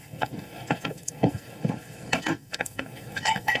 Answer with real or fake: fake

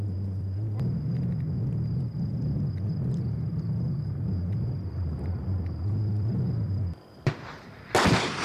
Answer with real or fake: real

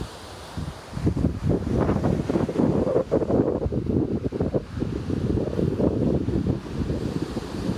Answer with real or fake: real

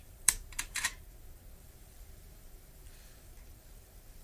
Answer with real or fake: fake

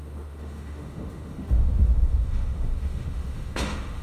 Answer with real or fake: fake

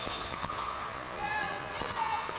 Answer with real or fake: fake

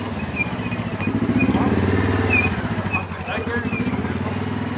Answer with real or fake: real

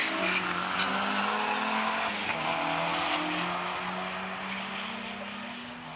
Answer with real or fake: real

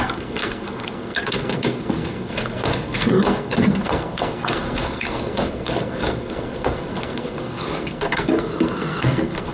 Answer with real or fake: fake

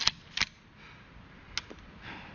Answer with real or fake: real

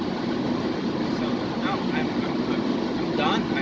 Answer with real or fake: real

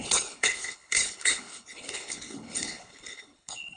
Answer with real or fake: fake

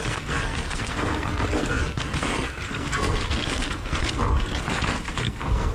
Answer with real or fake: fake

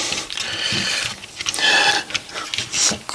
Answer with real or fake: real